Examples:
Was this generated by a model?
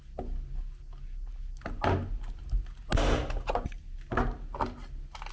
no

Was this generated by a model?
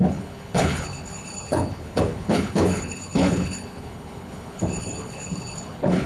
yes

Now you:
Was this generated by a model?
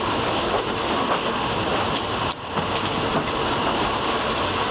no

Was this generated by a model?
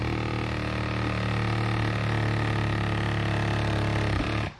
no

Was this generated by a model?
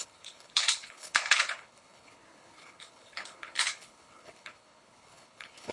yes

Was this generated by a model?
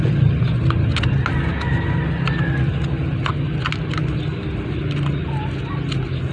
no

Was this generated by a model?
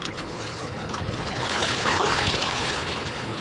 yes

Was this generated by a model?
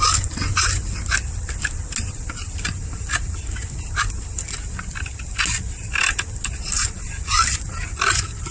no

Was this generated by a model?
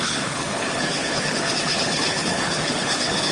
yes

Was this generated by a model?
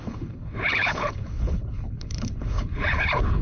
yes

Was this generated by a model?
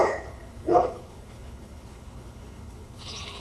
yes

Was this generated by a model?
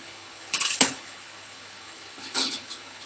yes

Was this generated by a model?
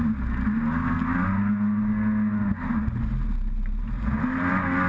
no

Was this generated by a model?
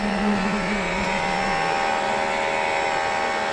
no